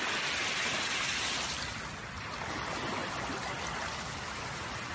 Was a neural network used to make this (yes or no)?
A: no